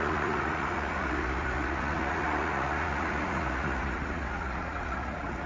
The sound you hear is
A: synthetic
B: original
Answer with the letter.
A